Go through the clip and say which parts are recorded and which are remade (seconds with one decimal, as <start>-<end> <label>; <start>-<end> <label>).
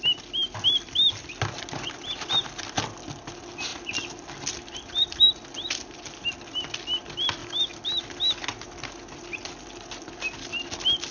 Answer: 0.0-11.1 recorded